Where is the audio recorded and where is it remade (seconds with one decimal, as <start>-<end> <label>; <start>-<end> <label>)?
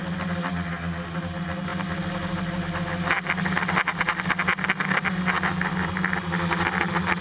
0.0-7.2 recorded